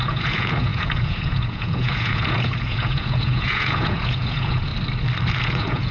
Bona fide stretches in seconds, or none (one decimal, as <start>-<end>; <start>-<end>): 4.7-5.4